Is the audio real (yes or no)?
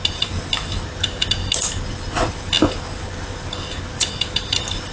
yes